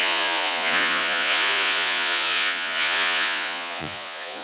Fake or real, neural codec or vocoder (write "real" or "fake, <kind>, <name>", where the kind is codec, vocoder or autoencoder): fake, vocoder, Vocos